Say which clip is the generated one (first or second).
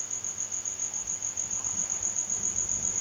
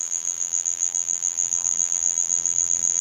second